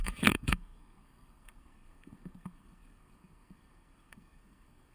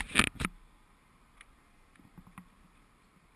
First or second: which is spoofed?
first